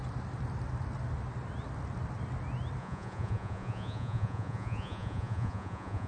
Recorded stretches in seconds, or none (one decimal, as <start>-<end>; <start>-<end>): 0.0-2.8